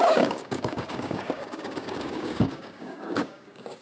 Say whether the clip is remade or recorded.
remade